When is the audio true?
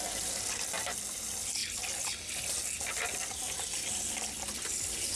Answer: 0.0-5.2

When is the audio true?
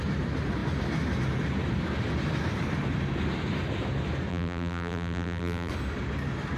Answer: 0.0-4.3; 5.7-6.6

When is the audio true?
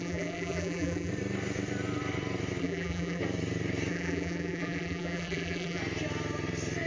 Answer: 1.1-2.6; 3.2-3.9; 5.8-6.9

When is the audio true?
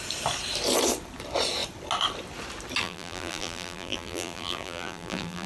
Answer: 0.0-2.8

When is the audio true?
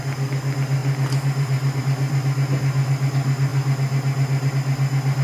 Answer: 0.0-0.8; 1.8-5.2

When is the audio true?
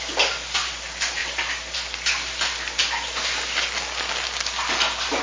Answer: 0.0-1.2; 2.8-5.2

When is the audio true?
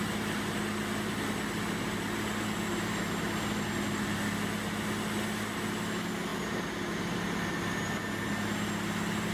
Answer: 0.0-9.3